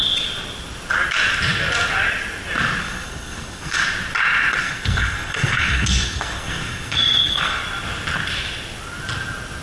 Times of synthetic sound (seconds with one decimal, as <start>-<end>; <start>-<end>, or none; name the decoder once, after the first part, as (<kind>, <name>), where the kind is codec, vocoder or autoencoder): 2.8-3.8 (codec, SNAC); 4.6-7.6